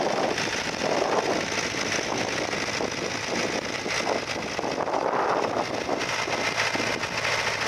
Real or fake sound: real